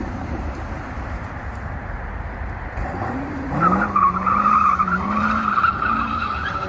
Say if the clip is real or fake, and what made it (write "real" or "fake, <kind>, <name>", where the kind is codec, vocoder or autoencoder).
fake, vocoder, BigVGAN v2